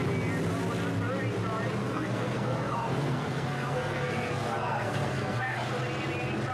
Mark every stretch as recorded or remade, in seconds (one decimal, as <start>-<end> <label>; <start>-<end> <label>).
0.0-1.8 recorded; 1.8-5.7 remade; 5.7-6.5 recorded